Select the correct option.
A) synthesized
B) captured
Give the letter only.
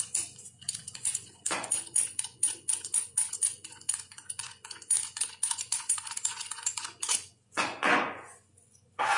A